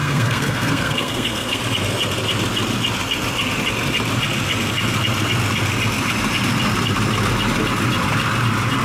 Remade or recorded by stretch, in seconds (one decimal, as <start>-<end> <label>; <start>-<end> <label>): 0.0-1.6 remade; 1.6-8.8 recorded

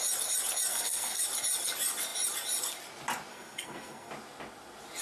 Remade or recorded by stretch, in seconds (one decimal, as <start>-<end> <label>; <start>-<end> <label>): 0.0-0.7 recorded; 0.7-1.2 remade; 1.2-3.3 recorded; 3.3-4.1 remade; 4.1-5.0 recorded

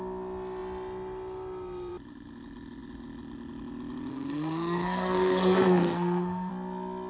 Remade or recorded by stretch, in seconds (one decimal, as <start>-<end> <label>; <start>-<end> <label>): 0.0-4.1 recorded; 4.1-6.5 remade; 6.5-7.1 recorded

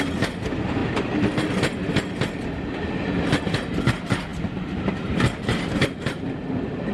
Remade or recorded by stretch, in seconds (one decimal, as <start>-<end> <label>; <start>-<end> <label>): 0.0-6.9 recorded

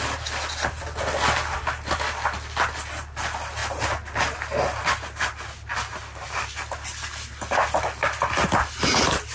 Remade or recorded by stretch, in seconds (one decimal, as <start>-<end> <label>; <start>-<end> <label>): 0.0-9.3 recorded

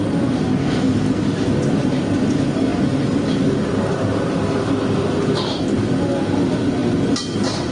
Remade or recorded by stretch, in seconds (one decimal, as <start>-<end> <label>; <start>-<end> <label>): 0.0-0.6 recorded; 0.6-1.2 remade; 1.2-7.7 recorded